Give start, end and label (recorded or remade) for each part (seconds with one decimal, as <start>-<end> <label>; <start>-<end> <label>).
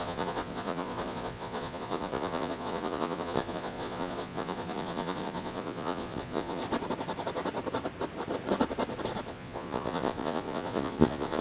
0.0-6.6 remade; 6.6-9.3 recorded; 9.3-11.4 remade